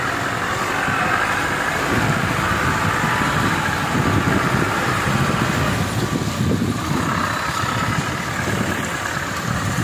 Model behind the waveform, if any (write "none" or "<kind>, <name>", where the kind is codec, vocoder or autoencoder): none